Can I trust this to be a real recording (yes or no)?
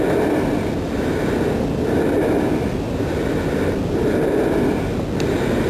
yes